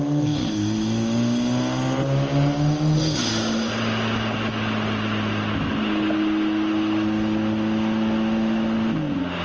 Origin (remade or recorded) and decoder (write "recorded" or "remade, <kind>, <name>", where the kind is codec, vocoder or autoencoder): recorded